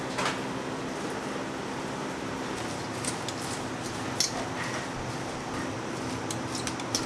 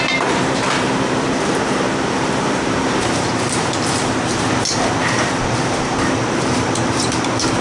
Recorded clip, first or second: first